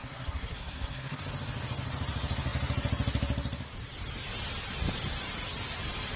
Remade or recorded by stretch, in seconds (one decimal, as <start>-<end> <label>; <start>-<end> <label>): 0.0-1.2 remade; 1.2-6.2 recorded